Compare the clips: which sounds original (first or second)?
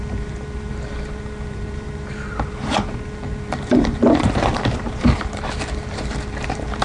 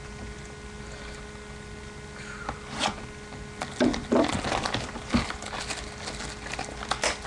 second